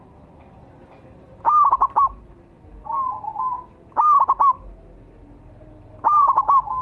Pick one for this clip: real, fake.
real